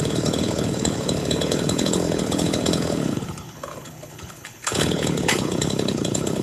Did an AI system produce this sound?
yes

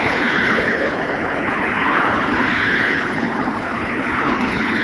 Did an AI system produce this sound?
yes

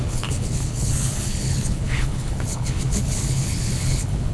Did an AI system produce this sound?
yes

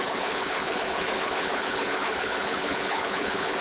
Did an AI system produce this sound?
yes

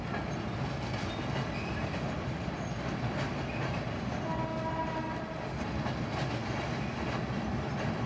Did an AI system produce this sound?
no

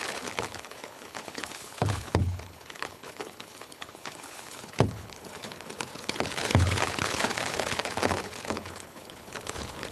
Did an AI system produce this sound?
yes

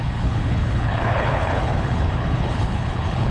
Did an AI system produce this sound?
yes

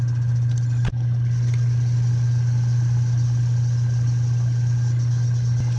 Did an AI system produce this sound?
no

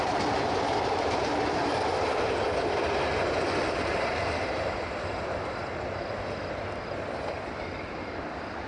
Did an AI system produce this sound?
no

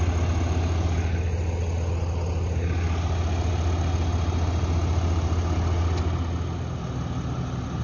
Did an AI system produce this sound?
no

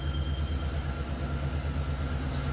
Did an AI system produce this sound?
no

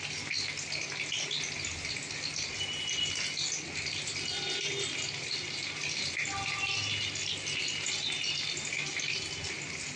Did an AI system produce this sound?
no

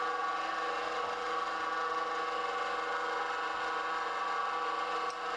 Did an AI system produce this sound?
no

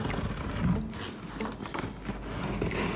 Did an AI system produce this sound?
no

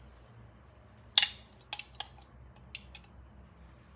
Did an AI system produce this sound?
no